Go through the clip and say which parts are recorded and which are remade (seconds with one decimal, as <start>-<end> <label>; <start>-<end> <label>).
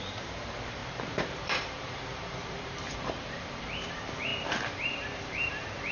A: 0.0-5.9 remade